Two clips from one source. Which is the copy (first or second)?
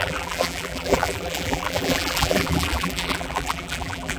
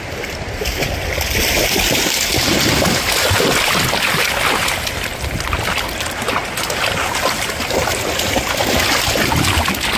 first